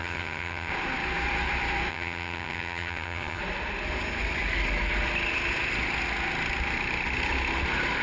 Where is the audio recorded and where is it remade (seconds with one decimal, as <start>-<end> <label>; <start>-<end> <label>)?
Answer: 0.0-0.7 remade; 0.7-1.9 recorded; 1.9-3.4 remade; 3.4-8.0 recorded